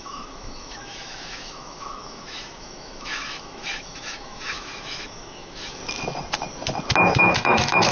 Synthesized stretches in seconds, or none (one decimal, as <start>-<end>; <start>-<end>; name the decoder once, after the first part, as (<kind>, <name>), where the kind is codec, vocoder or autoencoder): 0.0-5.8 (autoencoder, DAC-VAE); 7.2-7.9